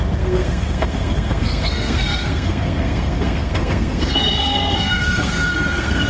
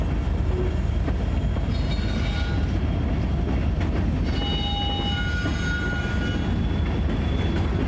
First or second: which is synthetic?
first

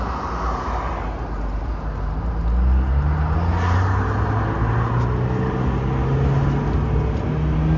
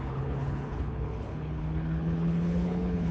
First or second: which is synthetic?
second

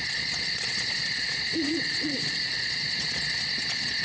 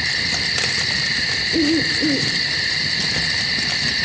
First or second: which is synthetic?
first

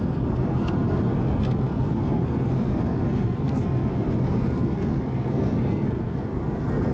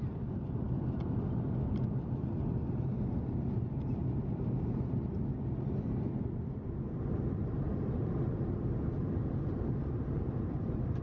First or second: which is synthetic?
first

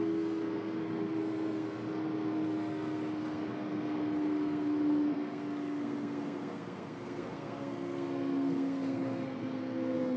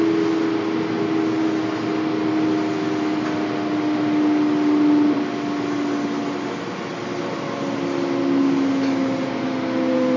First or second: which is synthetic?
first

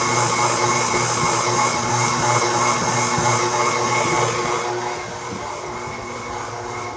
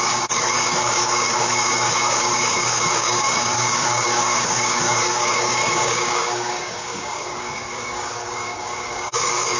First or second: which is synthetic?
second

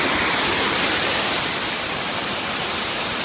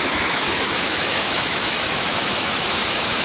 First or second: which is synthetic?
second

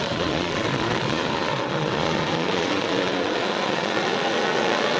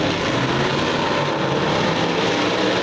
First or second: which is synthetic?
first